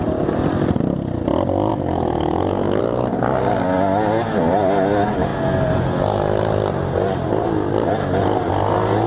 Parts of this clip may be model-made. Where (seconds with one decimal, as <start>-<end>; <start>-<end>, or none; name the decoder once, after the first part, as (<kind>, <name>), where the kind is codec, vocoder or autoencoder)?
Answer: 1.7-2.8 (autoencoder, DAC-VAE)